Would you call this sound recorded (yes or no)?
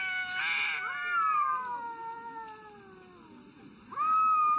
yes